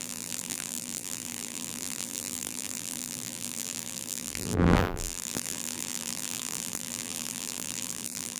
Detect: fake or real fake